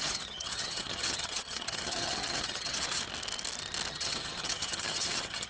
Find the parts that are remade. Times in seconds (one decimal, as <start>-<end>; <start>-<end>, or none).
0.0-3.0; 3.9-5.5